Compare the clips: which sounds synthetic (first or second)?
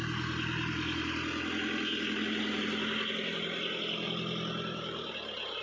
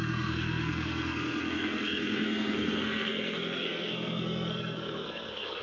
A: second